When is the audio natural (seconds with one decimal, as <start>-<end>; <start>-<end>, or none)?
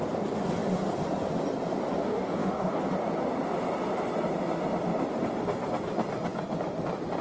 0.0-2.0; 2.8-7.2